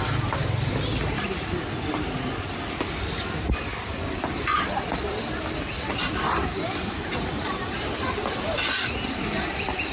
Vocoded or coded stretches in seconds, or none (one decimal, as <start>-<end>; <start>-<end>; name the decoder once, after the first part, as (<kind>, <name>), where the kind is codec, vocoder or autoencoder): 0.0-9.9 (vocoder, BigVGAN v2)